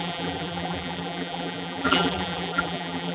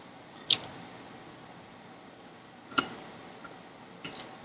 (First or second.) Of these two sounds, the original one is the second